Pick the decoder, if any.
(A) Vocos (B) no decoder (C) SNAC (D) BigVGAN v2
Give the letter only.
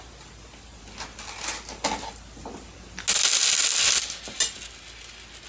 B